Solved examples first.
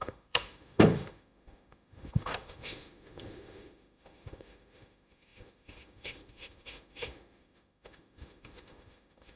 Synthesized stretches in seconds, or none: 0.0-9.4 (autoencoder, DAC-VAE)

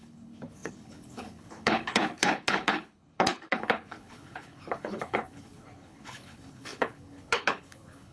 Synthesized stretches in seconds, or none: 0.0-8.1 (codec, HILCodec)

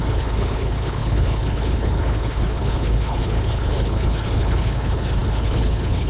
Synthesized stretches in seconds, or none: 0.0-6.1 (codec, HILCodec)

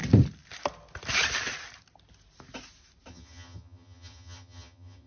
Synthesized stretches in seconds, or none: 3.1-5.1 (vocoder, HiFi-GAN)

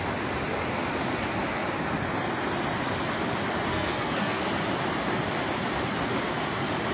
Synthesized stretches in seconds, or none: 3.7-4.4 (codec, SNAC)

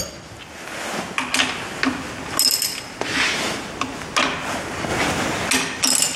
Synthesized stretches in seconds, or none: none